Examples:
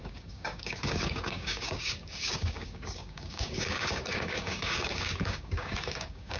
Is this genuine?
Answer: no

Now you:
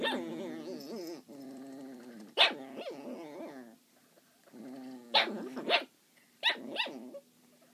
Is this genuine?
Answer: yes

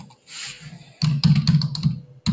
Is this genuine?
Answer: yes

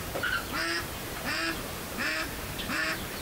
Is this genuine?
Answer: no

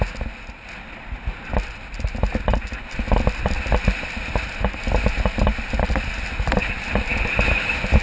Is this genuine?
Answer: yes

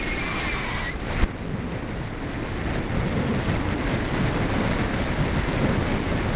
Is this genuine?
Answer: yes